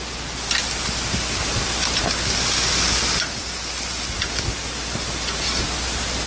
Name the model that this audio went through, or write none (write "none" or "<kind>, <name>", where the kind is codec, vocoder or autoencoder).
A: none